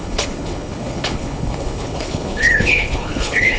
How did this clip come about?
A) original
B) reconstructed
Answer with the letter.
B